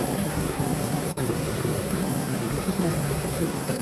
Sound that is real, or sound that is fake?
fake